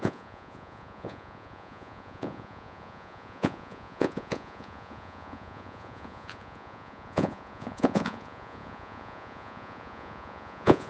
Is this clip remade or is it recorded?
remade